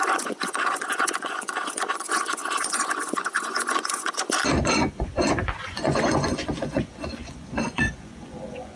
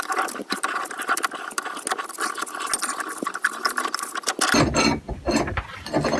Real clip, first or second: second